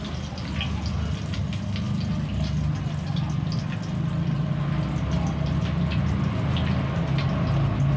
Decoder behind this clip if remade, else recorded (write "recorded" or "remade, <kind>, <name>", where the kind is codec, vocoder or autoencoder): recorded